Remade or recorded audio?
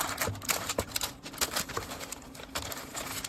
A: recorded